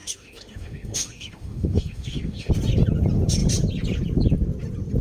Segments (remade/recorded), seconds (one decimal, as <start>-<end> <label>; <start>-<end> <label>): 0.0-2.5 remade; 2.5-5.0 recorded